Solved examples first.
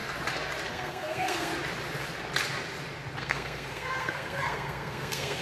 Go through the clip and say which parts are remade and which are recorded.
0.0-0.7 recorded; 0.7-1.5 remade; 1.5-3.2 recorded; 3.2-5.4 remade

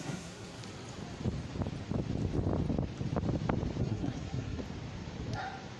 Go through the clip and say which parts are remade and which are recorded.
0.0-0.6 remade; 0.6-3.8 recorded; 3.8-4.6 remade; 4.6-5.8 recorded

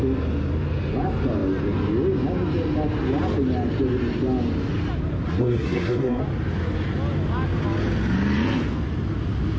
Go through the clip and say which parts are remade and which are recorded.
0.0-5.3 recorded; 5.3-6.2 remade; 6.2-9.6 recorded

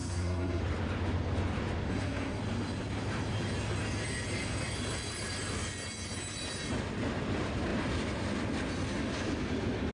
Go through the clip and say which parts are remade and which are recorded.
0.0-0.6 remade; 0.6-1.9 recorded; 1.9-2.4 remade; 2.4-9.9 recorded